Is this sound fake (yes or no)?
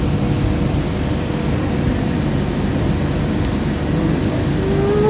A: no